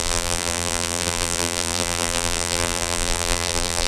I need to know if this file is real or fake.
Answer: fake